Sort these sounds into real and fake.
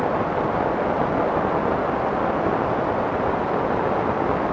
fake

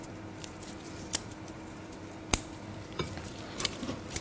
fake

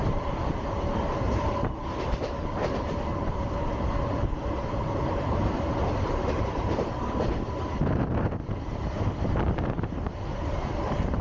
fake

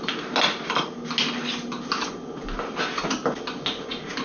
real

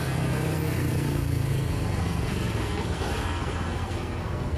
fake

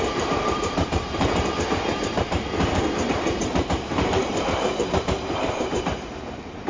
fake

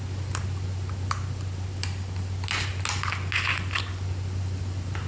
real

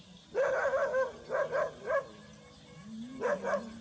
real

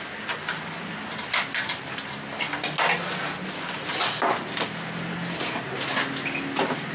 real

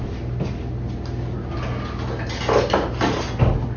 real